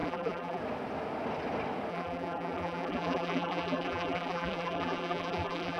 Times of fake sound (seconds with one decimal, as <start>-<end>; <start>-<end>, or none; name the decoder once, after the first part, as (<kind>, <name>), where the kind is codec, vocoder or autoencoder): 0.0-0.6 (vocoder, BigVGAN v2); 1.9-5.8